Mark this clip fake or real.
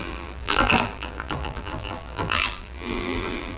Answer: fake